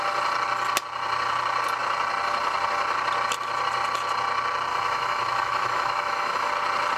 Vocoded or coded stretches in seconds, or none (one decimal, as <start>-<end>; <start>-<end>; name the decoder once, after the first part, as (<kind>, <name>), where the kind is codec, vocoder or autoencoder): 4.7-6.5 (autoencoder, DAC-VAE)